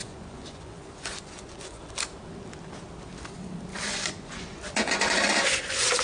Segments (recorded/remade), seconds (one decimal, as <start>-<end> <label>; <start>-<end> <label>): 0.0-1.8 remade; 1.8-3.7 recorded; 3.7-6.0 remade